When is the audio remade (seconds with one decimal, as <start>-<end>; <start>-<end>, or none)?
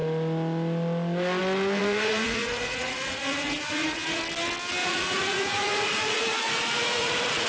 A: 1.8-4.2; 4.8-7.5